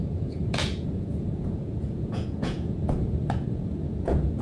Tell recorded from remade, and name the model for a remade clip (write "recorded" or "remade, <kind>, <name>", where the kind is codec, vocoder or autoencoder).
remade, vocoder, Vocos